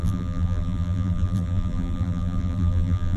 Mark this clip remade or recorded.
remade